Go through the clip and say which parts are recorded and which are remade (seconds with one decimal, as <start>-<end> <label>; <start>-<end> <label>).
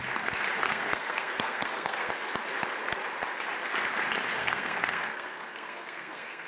0.0-0.6 recorded; 0.6-2.1 remade; 2.1-4.4 recorded; 4.4-6.5 remade